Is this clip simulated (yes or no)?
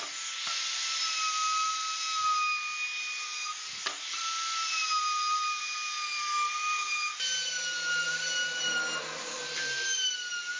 no